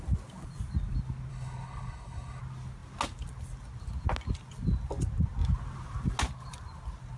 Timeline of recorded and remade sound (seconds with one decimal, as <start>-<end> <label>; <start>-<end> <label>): 0.0-1.3 recorded; 1.3-2.4 remade; 2.4-7.2 recorded